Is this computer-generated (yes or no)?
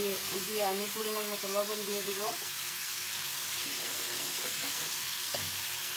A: yes